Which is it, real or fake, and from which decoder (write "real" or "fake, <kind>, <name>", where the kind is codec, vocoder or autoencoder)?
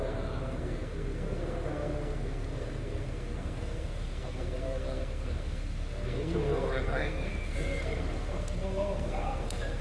fake, codec, SNAC